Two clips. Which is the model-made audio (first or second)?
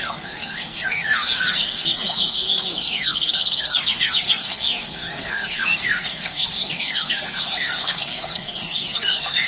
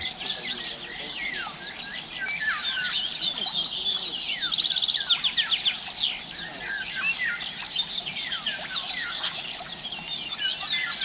first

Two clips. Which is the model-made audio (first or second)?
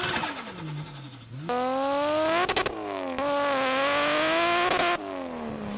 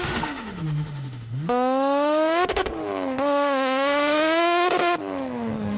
second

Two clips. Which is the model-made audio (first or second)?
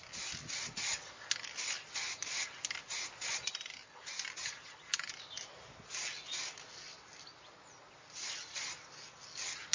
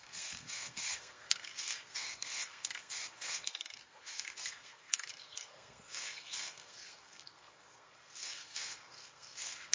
second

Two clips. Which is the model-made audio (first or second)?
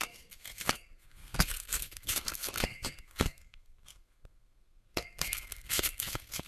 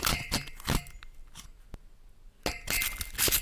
first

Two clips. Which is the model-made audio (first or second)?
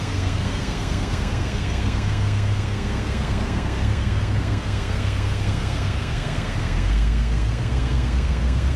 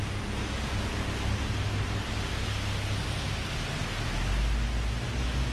first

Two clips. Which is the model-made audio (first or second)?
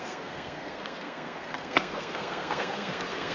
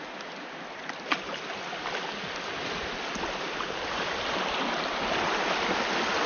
first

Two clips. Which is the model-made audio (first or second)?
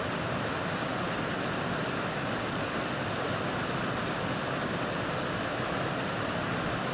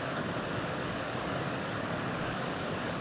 second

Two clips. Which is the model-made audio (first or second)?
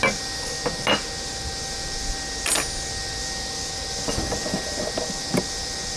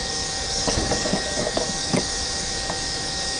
second